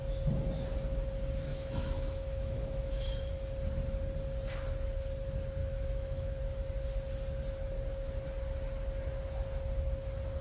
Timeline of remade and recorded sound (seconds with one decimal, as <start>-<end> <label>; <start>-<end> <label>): 0.0-1.5 recorded; 1.5-3.3 remade; 3.3-5.6 recorded; 5.6-6.4 remade; 6.4-10.4 recorded